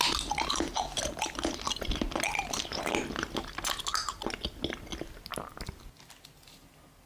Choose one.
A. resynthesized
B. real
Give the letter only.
B